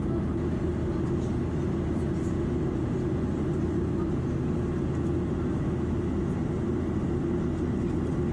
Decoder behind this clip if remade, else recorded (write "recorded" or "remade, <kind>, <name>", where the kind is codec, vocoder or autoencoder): recorded